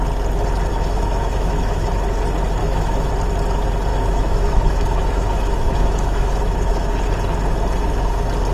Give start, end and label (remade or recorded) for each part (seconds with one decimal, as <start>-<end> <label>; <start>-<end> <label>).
0.0-0.7 recorded; 0.7-1.9 remade; 1.9-2.6 recorded; 2.6-3.1 remade; 3.1-3.9 recorded; 3.9-6.9 remade; 6.9-8.5 recorded